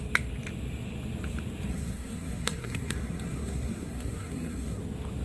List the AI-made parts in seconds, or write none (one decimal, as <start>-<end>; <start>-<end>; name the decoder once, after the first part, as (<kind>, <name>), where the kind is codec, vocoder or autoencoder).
1.7-4.8 (codec, SNAC)